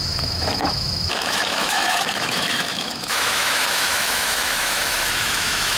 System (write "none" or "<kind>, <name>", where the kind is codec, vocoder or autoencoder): autoencoder, DAC-VAE